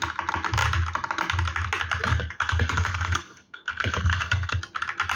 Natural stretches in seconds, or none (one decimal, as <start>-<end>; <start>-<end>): 0.0-2.1; 4.6-5.2